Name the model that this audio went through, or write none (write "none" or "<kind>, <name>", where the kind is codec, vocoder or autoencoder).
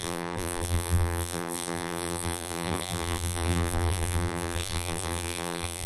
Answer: vocoder, BigVGAN v2